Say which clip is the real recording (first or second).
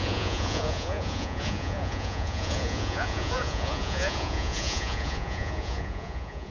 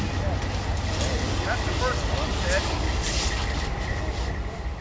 second